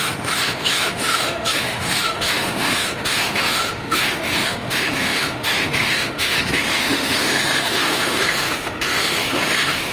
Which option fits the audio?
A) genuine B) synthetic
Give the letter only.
B